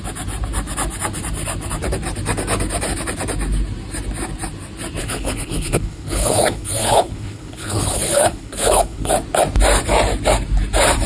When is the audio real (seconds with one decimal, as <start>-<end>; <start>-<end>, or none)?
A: 0.0-5.0; 9.1-11.1